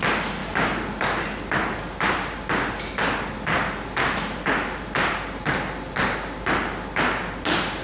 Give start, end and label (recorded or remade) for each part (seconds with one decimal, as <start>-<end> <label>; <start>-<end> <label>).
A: 0.0-7.8 recorded